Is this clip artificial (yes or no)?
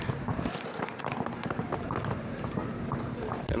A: yes